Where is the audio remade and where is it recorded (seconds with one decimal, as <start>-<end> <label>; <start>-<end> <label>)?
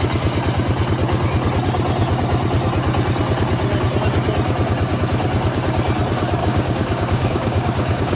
0.0-6.4 recorded; 6.4-8.2 remade